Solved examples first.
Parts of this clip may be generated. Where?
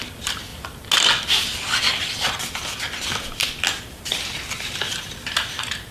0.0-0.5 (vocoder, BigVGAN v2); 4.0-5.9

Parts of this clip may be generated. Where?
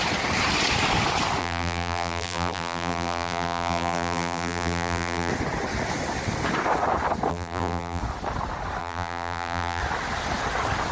1.4-5.3 (vocoder, BigVGAN v2); 7.3-8.0; 8.8-9.8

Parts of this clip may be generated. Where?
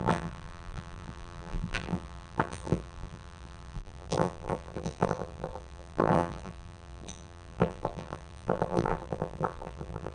0.0-10.1 (vocoder, BigVGAN v2)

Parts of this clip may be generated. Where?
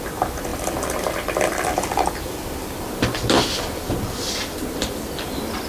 0.5-3.9 (vocoder, BigVGAN v2)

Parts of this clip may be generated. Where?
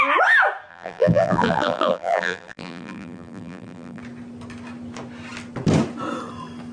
0.7-4.0 (vocoder, BigVGAN v2)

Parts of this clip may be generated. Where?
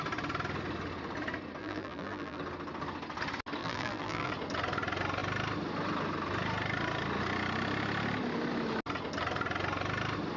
1.6-2.4 (vocoder, BigVGAN v2); 3.6-4.3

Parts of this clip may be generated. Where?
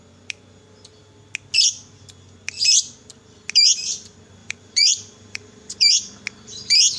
4.4-6.2 (vocoder, BigVGAN v2)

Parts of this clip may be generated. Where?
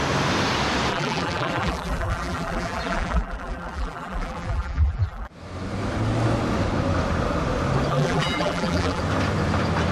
0.9-5.3 (vocoder, BigVGAN v2); 7.9-9.0